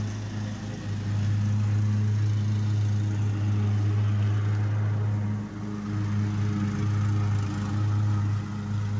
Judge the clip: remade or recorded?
recorded